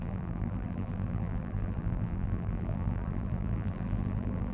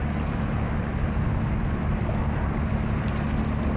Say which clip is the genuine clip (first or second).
second